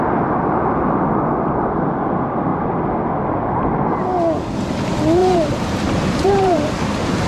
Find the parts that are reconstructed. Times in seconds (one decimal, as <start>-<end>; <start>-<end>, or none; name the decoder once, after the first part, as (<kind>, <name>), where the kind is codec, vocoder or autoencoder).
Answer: 5.2-6.7 (vocoder, BigVGAN v2)